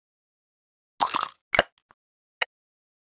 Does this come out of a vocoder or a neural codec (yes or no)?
no